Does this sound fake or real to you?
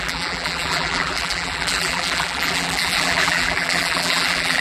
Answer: fake